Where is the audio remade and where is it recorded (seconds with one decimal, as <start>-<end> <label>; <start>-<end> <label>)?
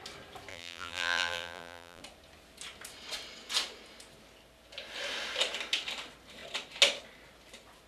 0.0-0.5 recorded; 0.5-2.0 remade; 2.0-7.9 recorded